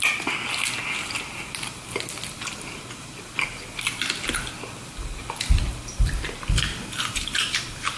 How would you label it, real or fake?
real